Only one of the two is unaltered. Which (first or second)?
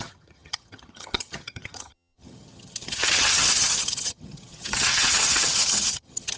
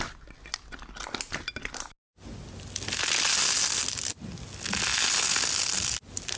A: second